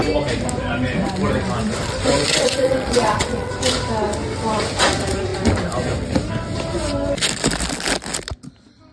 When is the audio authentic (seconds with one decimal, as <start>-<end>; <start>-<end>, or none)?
0.0-2.3; 3.5-8.9

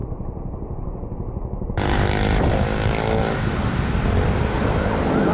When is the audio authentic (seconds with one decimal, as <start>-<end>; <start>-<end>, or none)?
0.0-5.3

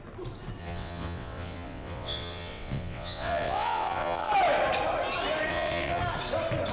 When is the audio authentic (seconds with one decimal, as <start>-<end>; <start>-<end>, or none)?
0.0-0.6; 4.3-5.5; 6.0-6.7